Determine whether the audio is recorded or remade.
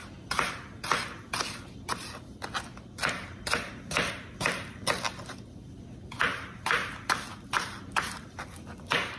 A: recorded